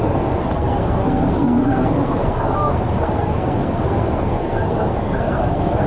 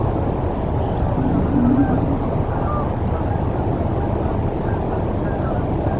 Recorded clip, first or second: second